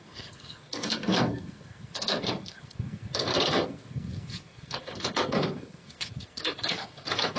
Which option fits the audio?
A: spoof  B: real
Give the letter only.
A